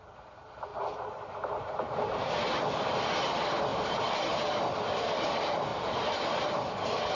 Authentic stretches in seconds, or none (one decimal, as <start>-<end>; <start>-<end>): 0.0-0.7; 2.2-3.7; 5.2-5.7; 6.3-7.1